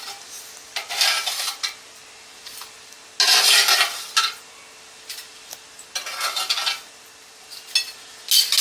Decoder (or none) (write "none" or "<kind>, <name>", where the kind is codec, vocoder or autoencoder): none